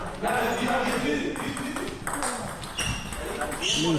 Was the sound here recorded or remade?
recorded